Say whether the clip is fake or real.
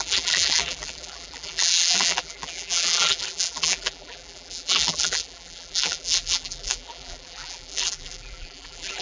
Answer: fake